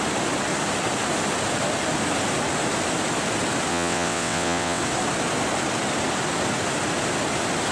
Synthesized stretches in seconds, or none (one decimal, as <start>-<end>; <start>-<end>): 3.7-4.8